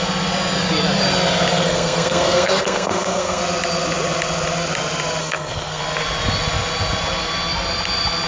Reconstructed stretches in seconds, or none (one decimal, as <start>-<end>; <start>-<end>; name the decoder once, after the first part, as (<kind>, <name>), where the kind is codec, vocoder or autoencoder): 1.5-3.4 (codec, SNAC); 5.2-5.8